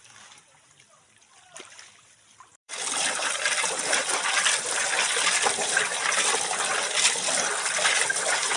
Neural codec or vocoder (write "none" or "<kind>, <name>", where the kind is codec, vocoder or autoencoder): vocoder, BigVGAN v2